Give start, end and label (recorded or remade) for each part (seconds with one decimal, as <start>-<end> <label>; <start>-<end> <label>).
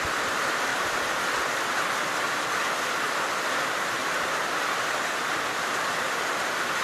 0.0-6.8 remade